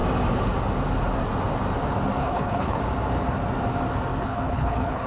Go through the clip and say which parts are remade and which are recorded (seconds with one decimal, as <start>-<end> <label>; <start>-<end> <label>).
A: 0.0-2.2 recorded; 2.2-2.8 remade; 2.8-4.1 recorded; 4.1-5.1 remade